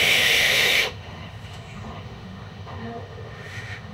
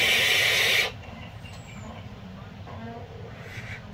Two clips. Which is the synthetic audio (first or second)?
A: first